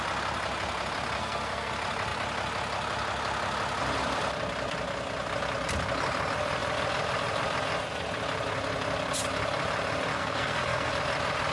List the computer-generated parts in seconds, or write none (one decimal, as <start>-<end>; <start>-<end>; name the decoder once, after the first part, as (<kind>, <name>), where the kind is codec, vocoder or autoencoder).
1.2-1.7 (codec, SNAC); 10.1-10.9